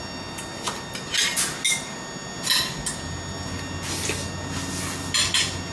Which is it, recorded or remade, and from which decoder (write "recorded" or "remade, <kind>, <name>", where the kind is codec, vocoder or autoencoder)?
recorded